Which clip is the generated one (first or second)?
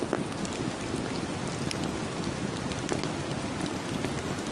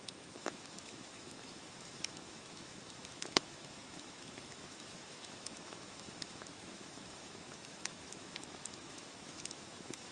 second